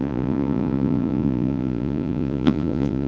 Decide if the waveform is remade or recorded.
remade